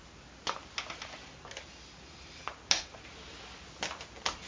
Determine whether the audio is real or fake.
real